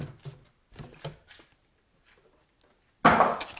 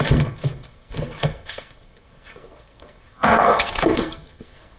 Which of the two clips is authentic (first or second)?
first